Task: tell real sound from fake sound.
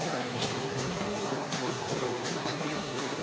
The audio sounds fake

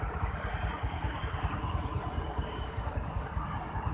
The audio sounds real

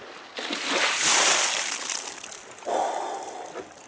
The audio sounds real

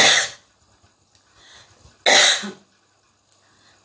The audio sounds real